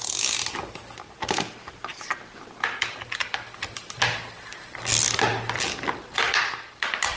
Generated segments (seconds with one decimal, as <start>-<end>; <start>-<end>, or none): none